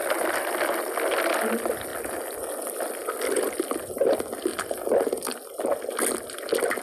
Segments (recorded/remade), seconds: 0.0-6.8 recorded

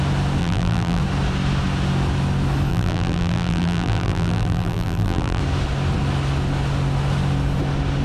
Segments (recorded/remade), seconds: 0.0-0.4 recorded; 0.4-1.0 remade; 1.0-2.7 recorded; 2.7-5.4 remade; 5.4-8.0 recorded

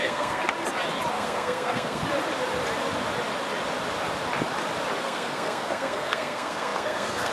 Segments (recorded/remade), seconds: 0.0-0.4 remade; 0.4-1.1 recorded; 1.1-2.0 remade; 2.0-5.0 recorded; 5.0-7.3 remade

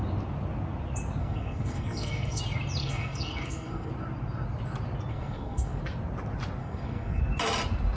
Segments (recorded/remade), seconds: 0.0-1.2 recorded; 1.2-2.4 remade; 2.4-2.8 recorded; 2.8-3.9 remade; 3.9-5.1 recorded; 5.1-5.8 remade; 5.8-6.6 recorded; 6.6-7.2 remade; 7.2-8.0 recorded

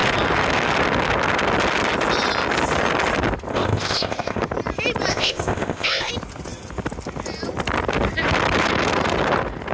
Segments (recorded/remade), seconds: 0.0-3.5 recorded; 3.5-4.4 remade; 4.4-5.1 recorded; 5.1-6.1 remade; 6.1-9.7 recorded